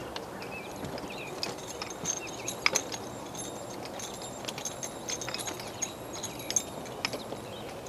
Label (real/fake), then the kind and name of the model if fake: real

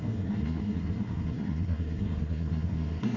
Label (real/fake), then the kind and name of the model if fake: fake, codec, SNAC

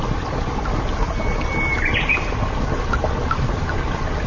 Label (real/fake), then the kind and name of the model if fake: real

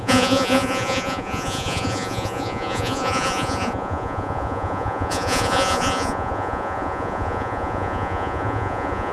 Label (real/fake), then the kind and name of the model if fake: fake, vocoder, Vocos